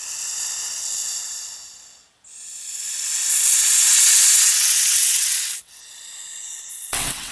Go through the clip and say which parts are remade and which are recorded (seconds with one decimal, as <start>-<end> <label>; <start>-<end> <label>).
0.0-3.3 recorded; 3.3-5.8 remade; 5.8-6.7 recorded; 6.7-7.3 remade

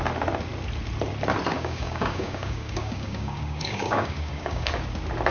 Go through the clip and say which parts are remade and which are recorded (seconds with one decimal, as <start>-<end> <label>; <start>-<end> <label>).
0.0-1.5 recorded; 1.5-4.7 remade; 4.7-5.3 recorded

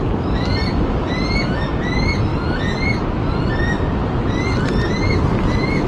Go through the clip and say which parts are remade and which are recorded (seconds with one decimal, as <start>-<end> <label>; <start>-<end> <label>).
0.0-5.9 recorded

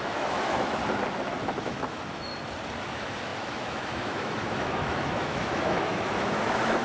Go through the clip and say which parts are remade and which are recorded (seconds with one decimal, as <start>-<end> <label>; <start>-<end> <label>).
0.0-0.8 remade; 0.8-1.6 recorded; 1.6-2.3 remade; 2.3-2.8 recorded; 2.8-6.8 remade